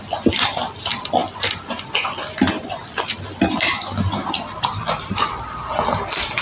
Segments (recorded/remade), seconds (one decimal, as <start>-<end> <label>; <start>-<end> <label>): 0.0-6.4 recorded